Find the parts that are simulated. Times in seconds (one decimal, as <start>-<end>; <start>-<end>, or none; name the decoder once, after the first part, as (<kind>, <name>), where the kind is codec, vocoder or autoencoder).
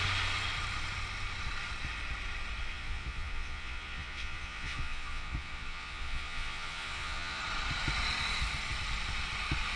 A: 2.7-7.4 (vocoder, Vocos)